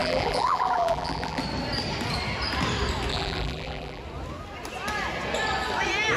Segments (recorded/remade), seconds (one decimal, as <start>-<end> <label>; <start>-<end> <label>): 0.0-1.4 remade; 1.4-3.1 recorded; 3.1-4.0 remade; 4.0-6.2 recorded